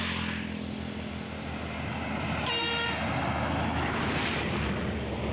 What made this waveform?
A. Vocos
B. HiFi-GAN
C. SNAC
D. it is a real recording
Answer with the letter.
D